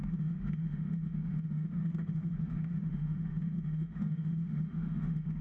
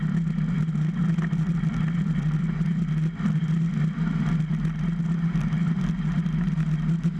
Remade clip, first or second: first